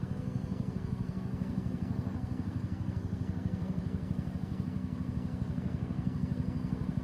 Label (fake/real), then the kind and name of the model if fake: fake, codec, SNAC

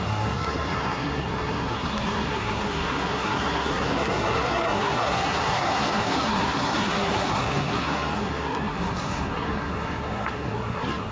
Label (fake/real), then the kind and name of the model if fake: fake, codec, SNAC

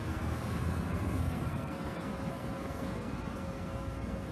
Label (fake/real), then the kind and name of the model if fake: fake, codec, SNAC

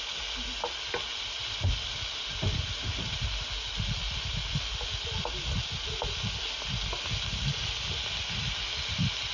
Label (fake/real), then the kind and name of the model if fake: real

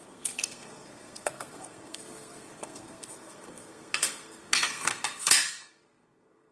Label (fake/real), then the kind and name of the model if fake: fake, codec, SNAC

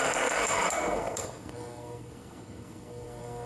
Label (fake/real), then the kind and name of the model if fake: fake, codec, SNAC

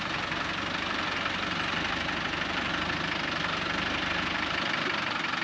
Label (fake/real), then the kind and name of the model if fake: real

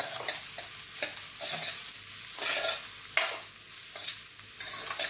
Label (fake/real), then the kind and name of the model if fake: real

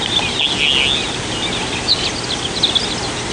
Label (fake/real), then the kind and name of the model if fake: real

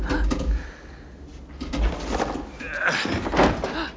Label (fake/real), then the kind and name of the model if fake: real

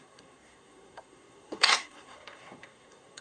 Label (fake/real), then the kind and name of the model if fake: fake, codec, SNAC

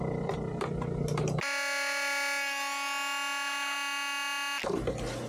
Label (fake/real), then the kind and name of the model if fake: real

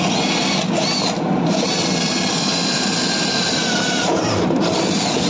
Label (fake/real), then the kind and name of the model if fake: real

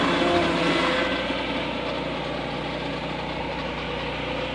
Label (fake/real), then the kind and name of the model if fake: real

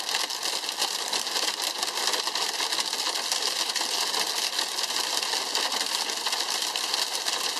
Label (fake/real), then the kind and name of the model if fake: real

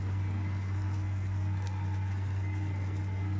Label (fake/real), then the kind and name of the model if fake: fake, codec, SNAC